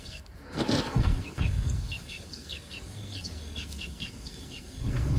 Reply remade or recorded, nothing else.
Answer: remade